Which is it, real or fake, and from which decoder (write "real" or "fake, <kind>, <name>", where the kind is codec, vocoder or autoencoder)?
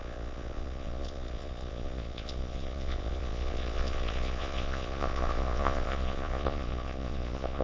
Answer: fake, vocoder, Vocos